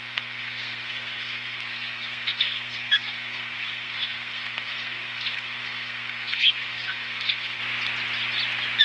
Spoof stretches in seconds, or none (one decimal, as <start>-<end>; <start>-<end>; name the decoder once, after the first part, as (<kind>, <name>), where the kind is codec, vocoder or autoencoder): 0.0-7.6 (codec, SNAC)